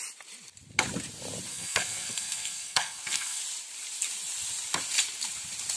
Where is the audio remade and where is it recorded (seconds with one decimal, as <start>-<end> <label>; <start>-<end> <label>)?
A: 0.0-1.5 recorded; 1.5-3.4 remade; 3.4-5.8 recorded